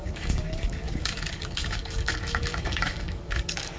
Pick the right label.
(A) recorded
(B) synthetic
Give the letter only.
B